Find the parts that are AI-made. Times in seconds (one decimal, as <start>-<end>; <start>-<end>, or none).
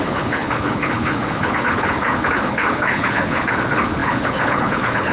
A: 0.0-5.1